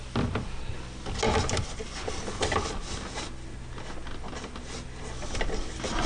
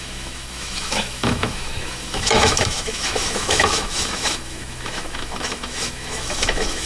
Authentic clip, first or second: first